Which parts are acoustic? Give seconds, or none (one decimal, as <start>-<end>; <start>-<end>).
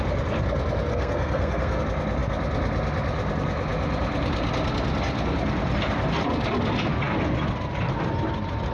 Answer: 0.0-0.9; 1.8-8.7